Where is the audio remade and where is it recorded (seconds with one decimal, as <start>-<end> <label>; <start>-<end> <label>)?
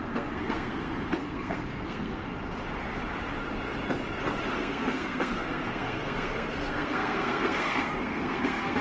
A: 0.0-2.3 remade; 2.3-4.5 recorded; 4.5-8.8 remade